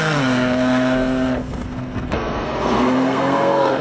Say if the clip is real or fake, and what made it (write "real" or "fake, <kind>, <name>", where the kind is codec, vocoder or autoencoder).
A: fake, codec, SNAC